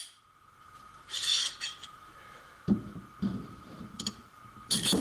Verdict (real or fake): fake